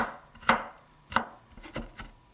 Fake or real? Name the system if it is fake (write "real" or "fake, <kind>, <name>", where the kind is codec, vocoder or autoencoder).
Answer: real